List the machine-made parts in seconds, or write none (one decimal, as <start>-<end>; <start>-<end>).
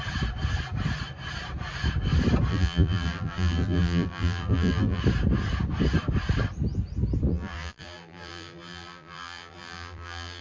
2.5-5.0; 7.3-10.4